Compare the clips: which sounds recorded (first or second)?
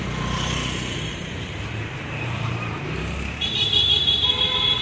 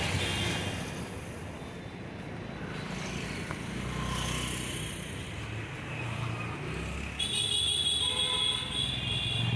second